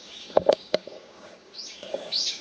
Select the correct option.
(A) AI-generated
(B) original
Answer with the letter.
A